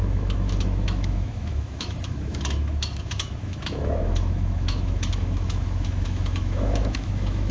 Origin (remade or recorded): remade